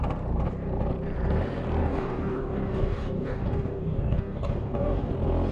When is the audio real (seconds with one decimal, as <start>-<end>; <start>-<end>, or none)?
0.0-1.8; 5.1-5.5